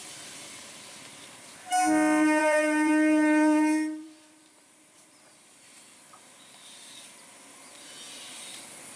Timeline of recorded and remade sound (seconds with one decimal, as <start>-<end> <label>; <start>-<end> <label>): 0.0-2.4 recorded; 2.4-5.8 remade; 5.8-9.0 recorded